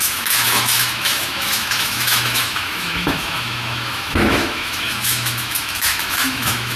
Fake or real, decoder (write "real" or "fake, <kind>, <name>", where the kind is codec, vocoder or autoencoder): fake, autoencoder, DAC-VAE